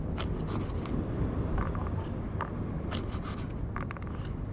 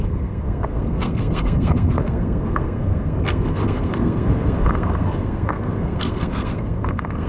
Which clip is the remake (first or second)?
second